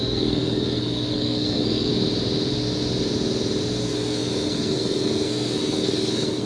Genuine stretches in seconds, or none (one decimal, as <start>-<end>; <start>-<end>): 1.9-3.8